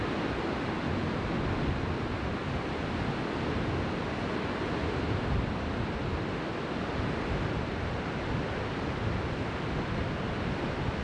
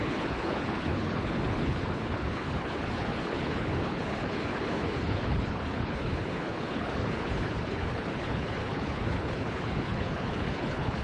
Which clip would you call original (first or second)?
first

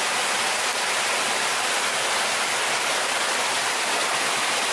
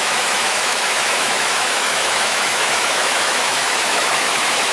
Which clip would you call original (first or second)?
first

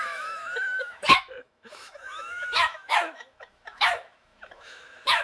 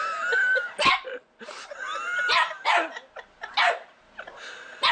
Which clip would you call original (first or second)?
second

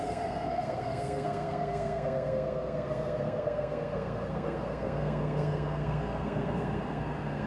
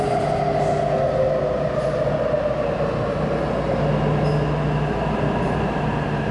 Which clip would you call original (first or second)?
second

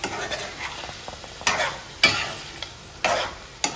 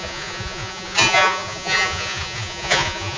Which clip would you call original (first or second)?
first